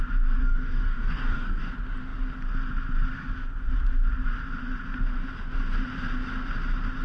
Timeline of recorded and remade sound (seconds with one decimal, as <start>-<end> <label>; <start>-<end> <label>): 0.0-0.4 recorded; 0.4-1.7 remade; 1.7-7.0 recorded